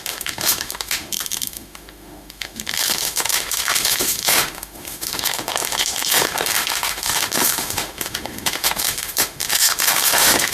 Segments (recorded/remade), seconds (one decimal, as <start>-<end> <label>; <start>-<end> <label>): 0.0-10.5 remade